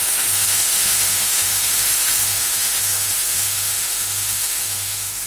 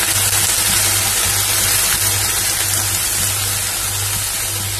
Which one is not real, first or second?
first